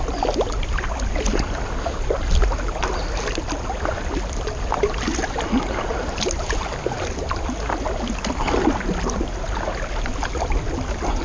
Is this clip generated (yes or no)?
no